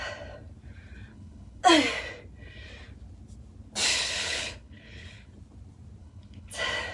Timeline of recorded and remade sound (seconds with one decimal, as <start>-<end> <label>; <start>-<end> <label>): 0.0-1.1 recorded; 1.1-1.6 remade; 1.6-3.9 recorded; 3.9-5.3 remade; 5.3-6.0 recorded; 6.0-6.5 remade; 6.5-6.9 recorded